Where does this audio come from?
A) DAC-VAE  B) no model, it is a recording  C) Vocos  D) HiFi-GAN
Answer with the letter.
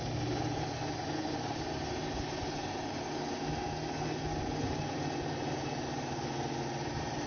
B